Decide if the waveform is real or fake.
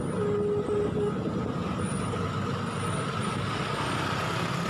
real